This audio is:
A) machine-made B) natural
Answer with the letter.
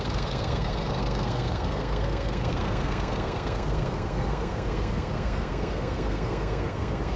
A